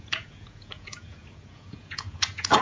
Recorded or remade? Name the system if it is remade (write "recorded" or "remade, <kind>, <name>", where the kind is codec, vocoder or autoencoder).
remade, vocoder, Vocos